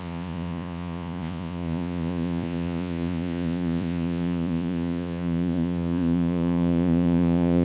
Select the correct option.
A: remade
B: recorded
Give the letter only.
A